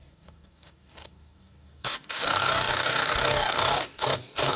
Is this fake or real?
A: fake